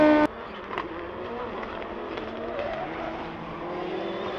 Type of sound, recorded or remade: recorded